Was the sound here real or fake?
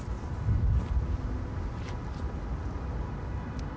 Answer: real